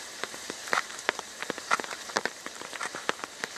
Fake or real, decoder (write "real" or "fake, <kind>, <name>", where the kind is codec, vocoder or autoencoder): fake, vocoder, BigVGAN v2